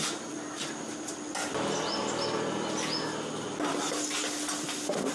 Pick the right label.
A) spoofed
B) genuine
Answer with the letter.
B